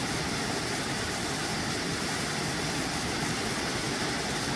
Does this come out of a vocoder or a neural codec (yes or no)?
no